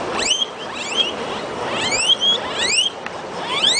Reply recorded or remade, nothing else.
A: recorded